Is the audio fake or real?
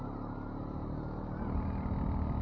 real